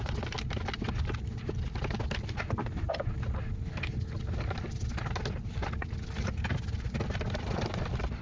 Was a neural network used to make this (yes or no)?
no